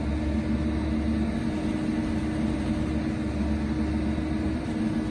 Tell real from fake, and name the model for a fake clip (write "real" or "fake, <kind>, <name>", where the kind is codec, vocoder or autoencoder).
real